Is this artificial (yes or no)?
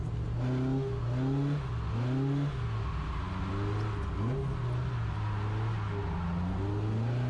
no